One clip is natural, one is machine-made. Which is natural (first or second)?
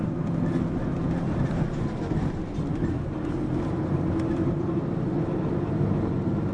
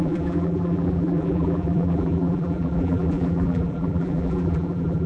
first